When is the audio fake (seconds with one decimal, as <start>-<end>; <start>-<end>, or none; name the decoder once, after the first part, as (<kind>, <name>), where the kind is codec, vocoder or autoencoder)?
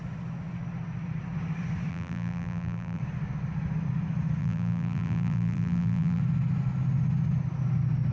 1.9-3.0 (vocoder, BigVGAN v2); 4.4-6.2